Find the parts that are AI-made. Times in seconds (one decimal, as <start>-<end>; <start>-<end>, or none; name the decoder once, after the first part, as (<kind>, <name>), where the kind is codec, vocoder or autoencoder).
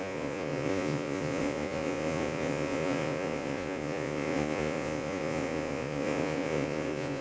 0.0-7.2 (vocoder, Vocos)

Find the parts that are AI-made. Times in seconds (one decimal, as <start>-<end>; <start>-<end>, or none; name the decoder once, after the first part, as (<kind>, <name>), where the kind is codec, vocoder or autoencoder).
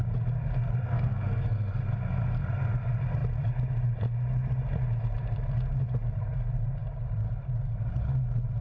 0.8-1.7 (codec, SNAC)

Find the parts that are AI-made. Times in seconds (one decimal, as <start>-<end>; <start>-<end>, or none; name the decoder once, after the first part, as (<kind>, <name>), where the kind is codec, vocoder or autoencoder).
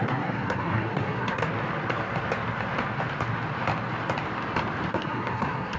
0.0-1.4 (codec, SNAC); 4.9-5.8